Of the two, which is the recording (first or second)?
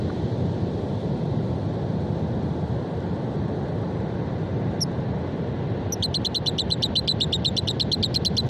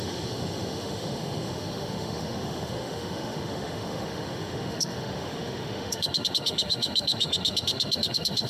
first